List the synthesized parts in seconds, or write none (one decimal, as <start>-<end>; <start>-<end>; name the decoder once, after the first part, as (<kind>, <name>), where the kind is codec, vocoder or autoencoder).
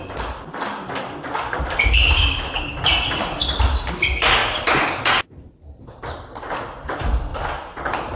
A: none